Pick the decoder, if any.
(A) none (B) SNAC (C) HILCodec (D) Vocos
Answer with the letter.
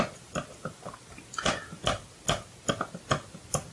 A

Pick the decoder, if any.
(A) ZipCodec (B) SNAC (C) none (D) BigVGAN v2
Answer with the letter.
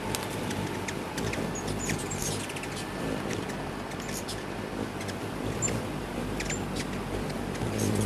C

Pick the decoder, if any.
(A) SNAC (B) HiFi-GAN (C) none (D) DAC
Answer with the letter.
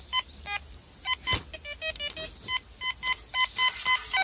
C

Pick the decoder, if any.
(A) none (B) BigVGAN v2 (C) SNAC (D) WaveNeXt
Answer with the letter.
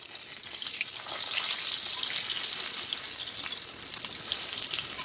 A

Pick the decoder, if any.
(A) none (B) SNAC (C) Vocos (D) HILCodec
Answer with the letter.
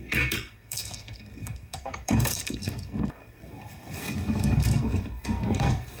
B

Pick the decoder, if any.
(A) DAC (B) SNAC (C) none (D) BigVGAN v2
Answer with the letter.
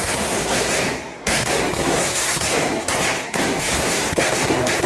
B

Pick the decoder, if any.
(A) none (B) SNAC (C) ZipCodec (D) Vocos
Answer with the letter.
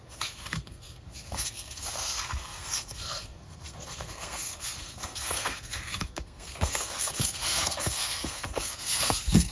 B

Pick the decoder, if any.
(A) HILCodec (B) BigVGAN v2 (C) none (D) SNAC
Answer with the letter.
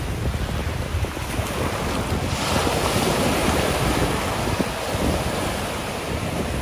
C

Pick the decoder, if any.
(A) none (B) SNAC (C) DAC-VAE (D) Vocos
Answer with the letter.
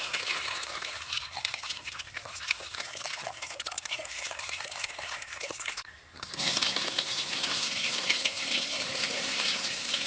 B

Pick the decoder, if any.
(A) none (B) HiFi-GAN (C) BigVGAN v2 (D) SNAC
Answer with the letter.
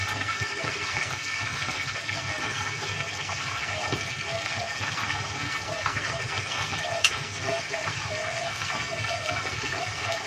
D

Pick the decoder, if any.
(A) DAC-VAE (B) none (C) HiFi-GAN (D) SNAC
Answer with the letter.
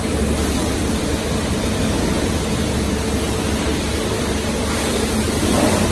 B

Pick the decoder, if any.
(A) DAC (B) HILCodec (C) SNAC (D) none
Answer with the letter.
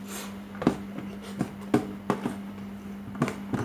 D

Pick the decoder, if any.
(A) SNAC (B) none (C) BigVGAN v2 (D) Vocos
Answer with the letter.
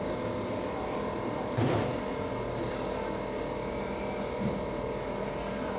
B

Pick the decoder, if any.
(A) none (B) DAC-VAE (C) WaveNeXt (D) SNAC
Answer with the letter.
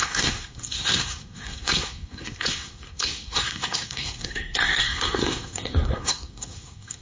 D